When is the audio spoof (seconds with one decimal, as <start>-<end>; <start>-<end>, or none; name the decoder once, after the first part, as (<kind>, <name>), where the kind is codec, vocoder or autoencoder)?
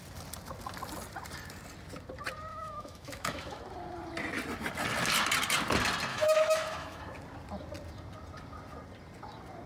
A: 2.5-3.6 (autoencoder, DAC-VAE); 6.1-7.0